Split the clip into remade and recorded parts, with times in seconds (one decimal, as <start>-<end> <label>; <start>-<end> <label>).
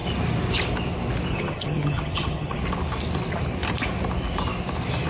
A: 0.0-1.3 recorded; 1.3-2.6 remade; 2.6-5.1 recorded